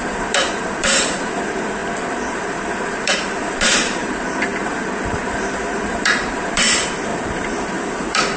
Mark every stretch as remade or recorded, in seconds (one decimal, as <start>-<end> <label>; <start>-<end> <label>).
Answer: 0.0-1.8 remade; 1.8-2.3 recorded; 2.3-8.4 remade

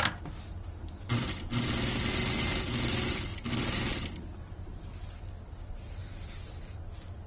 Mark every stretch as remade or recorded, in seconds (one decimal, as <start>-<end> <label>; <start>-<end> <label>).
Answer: 0.0-7.3 recorded